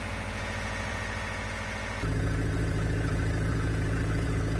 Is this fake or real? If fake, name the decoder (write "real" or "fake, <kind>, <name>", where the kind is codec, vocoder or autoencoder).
fake, vocoder, Vocos